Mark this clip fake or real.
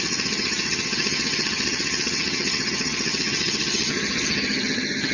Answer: fake